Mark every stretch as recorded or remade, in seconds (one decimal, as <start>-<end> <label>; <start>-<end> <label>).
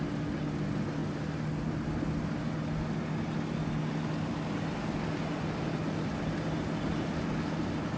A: 0.0-8.0 recorded